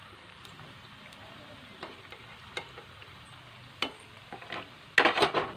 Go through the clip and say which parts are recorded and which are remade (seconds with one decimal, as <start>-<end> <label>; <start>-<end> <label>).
0.0-3.4 remade; 3.4-5.6 recorded